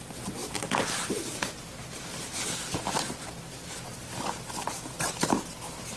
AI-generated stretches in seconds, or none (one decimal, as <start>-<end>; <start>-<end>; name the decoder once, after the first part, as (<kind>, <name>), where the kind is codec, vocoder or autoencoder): none